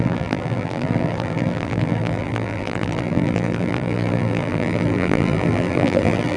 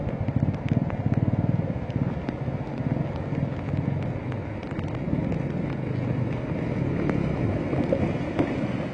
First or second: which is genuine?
second